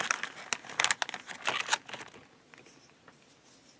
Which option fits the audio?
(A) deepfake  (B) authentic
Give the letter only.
B